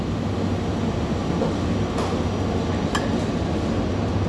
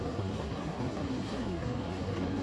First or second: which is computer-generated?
second